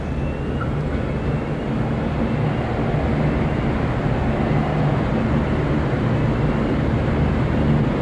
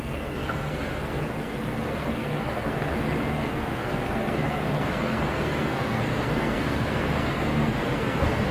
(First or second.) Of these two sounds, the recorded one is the first